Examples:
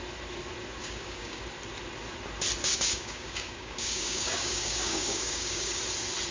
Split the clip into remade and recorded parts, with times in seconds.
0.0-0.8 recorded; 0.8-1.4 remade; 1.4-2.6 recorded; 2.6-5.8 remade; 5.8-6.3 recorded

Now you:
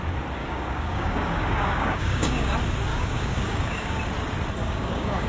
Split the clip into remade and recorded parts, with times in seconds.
0.0-0.4 recorded; 0.4-2.5 remade; 2.5-2.9 recorded; 2.9-4.0 remade; 4.0-4.6 recorded; 4.6-5.3 remade

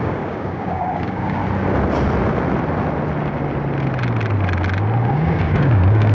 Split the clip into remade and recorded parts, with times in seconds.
0.0-1.4 remade; 1.4-5.1 recorded; 5.1-6.1 remade

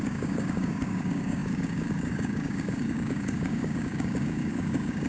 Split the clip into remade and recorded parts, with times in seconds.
0.0-5.1 remade

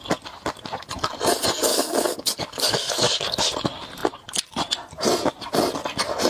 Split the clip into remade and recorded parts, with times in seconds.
0.0-1.7 recorded; 1.7-3.5 remade; 3.5-6.3 recorded

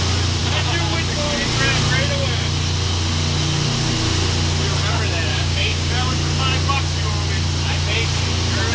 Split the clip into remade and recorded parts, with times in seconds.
0.0-5.3 recorded; 5.3-5.9 remade; 5.9-8.7 recorded

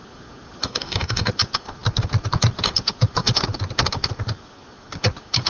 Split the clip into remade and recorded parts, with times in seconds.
0.0-0.6 recorded; 0.6-1.3 remade; 1.3-5.5 recorded

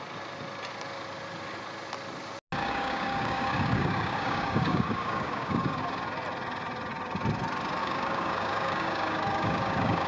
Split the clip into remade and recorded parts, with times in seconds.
0.0-2.6 recorded; 2.6-5.8 remade; 5.8-7.8 recorded; 7.8-10.1 remade